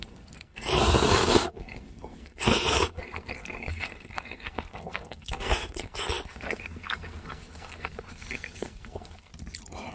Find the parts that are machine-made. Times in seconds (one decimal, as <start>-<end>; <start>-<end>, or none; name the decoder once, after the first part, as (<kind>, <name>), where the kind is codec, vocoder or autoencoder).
0.0-9.3 (codec, SNAC)